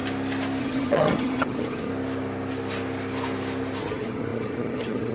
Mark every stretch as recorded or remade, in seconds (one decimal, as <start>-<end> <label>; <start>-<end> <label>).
0.0-0.6 recorded; 0.6-1.9 remade; 1.9-3.8 recorded; 3.8-5.1 remade

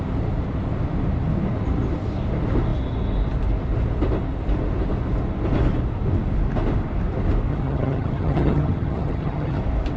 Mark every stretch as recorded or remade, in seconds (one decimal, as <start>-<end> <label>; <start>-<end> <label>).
0.0-7.5 recorded; 7.5-9.6 remade; 9.6-10.0 recorded

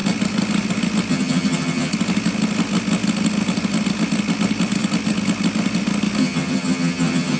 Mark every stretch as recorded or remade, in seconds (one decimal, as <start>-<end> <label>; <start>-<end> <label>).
0.0-1.1 recorded; 1.1-1.9 remade; 1.9-6.2 recorded; 6.2-7.4 remade

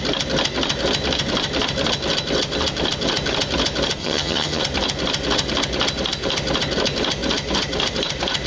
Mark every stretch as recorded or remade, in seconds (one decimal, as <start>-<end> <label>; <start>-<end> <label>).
0.0-4.0 recorded; 4.0-4.6 remade; 4.6-8.5 recorded

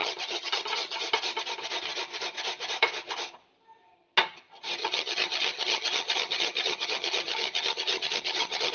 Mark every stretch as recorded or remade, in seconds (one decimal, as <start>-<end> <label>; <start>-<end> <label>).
0.0-1.1 remade; 1.1-4.8 recorded; 4.8-8.7 remade

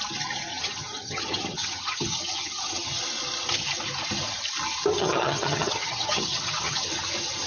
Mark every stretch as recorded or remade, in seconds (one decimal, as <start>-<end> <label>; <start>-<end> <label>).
0.0-0.5 recorded; 0.5-3.0 remade; 3.0-4.9 recorded; 4.9-6.9 remade; 6.9-7.5 recorded

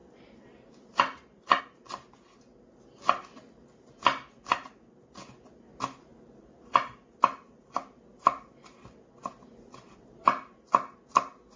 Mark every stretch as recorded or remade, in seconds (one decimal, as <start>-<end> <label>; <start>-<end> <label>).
0.0-11.6 recorded